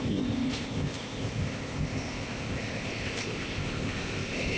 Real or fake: fake